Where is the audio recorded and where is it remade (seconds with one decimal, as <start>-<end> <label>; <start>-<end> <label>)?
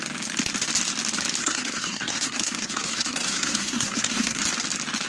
0.0-1.4 recorded; 1.4-4.4 remade; 4.4-5.1 recorded